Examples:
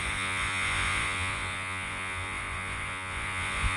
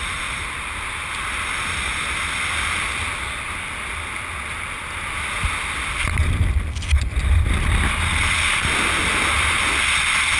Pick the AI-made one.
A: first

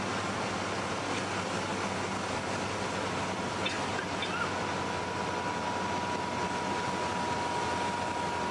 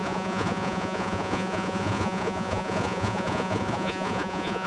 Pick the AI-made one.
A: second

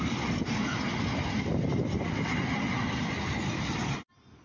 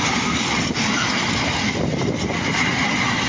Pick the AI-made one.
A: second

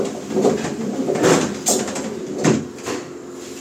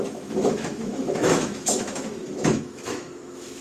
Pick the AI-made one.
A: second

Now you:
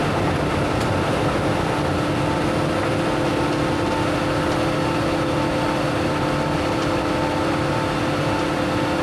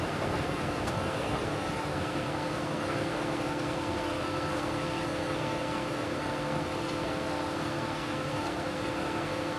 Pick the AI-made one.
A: second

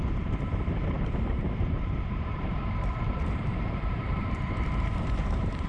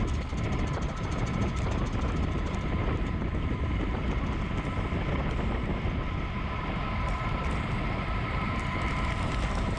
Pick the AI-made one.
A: first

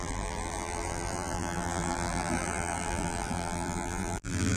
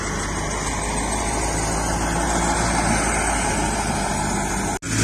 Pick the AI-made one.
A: first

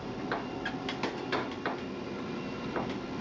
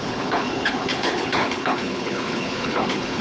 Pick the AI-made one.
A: second